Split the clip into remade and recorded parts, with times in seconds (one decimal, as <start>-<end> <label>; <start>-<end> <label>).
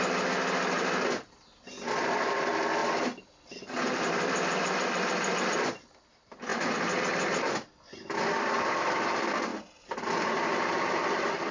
0.0-2.8 recorded; 2.8-6.0 remade; 6.0-9.5 recorded; 9.5-10.9 remade; 10.9-11.5 recorded